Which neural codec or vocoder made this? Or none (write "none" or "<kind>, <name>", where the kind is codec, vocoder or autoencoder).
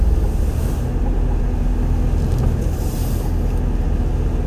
none